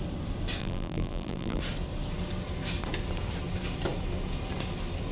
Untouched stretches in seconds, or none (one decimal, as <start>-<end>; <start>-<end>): 0.0-0.6; 1.6-5.1